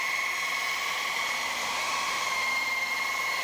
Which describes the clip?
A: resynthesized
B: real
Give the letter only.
A